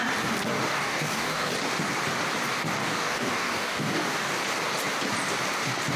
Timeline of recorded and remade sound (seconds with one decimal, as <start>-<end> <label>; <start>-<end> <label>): 0.0-0.7 recorded; 0.7-1.5 remade; 1.5-2.8 recorded; 2.8-4.3 remade; 4.3-6.0 recorded